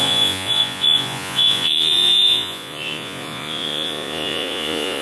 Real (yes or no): no